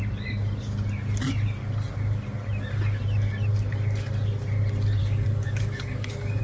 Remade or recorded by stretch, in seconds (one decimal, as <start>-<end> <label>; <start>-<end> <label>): 0.0-5.0 recorded; 5.0-6.4 remade

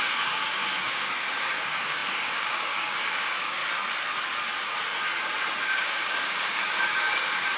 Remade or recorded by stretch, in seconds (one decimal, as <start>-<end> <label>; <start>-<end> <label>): 0.0-3.6 remade; 3.6-5.6 recorded; 5.6-7.6 remade